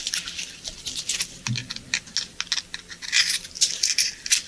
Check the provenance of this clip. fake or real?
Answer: real